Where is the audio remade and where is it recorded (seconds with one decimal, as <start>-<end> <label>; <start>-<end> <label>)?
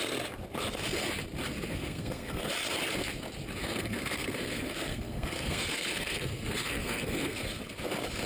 0.0-1.7 recorded; 1.7-2.5 remade; 2.5-3.6 recorded; 3.6-7.6 remade; 7.6-8.3 recorded